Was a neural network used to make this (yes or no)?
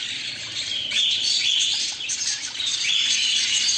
yes